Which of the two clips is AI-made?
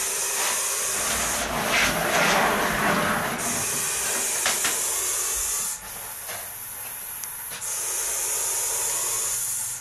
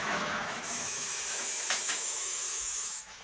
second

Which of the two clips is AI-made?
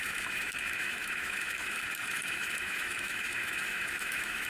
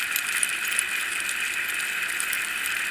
first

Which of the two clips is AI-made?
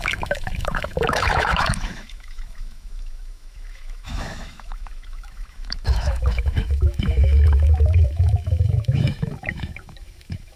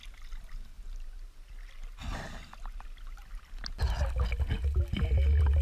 first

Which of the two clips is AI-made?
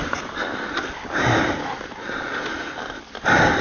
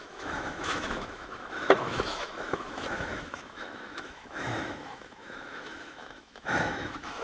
second